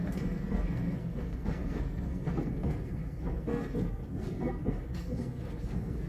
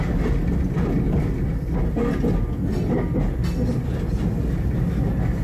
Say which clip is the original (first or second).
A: second